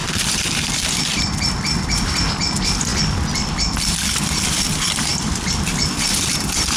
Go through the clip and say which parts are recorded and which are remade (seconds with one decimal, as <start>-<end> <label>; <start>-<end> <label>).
0.0-1.5 remade; 1.5-5.1 recorded; 5.1-5.7 remade; 5.7-6.8 recorded